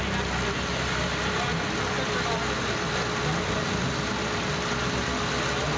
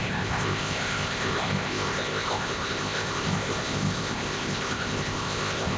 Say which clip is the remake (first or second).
second